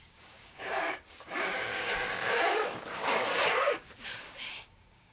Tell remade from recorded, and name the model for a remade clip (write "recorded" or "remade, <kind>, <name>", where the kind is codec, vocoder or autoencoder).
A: remade, codec, DAC